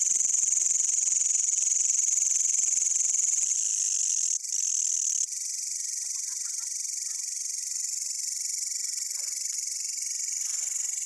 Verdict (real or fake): real